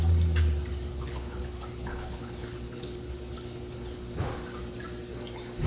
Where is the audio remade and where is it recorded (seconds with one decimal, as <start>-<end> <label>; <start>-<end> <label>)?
0.0-0.9 recorded; 0.9-4.3 remade; 4.3-5.7 recorded